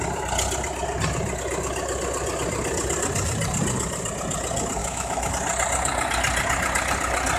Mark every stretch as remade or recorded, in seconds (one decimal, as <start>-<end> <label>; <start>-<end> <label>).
0.0-4.8 recorded; 4.8-5.3 remade; 5.3-7.4 recorded